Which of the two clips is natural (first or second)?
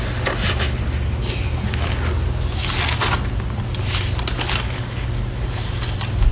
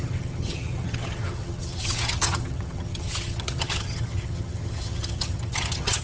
first